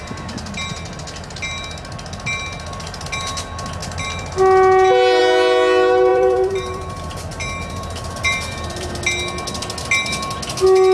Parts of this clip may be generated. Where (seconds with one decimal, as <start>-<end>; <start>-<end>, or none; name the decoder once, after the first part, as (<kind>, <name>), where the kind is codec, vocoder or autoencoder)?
6.1-8.9 (vocoder, BigVGAN v2)